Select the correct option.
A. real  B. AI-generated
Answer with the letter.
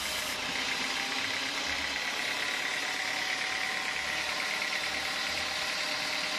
A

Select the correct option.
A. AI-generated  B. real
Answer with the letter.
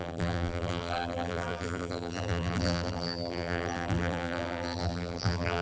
A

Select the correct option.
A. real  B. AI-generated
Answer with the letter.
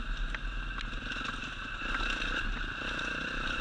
A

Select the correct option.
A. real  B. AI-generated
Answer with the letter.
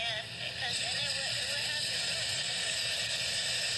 A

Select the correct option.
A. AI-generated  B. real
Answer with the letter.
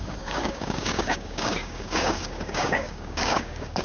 A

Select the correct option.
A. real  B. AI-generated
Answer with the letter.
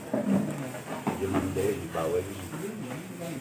B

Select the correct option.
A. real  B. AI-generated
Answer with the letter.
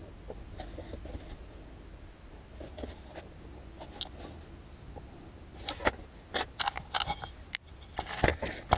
A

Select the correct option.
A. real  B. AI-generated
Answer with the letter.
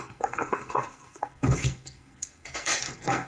B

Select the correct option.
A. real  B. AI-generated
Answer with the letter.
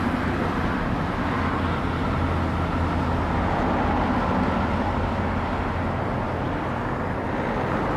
A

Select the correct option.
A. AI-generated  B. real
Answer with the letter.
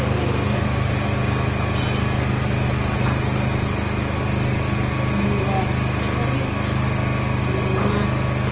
B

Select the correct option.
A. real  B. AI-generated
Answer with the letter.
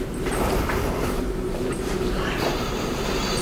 B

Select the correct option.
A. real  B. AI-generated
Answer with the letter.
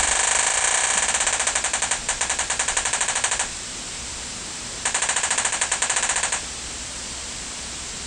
B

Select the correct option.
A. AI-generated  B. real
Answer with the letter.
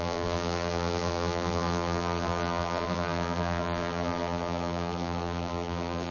A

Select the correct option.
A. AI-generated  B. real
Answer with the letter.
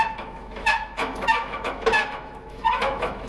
A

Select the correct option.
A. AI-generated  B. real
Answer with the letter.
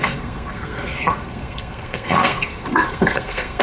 A